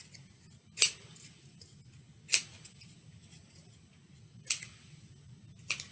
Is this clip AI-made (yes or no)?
no